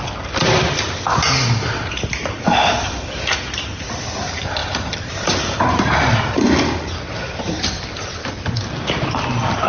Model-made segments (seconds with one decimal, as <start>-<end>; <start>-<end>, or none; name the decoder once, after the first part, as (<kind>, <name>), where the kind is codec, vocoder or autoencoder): none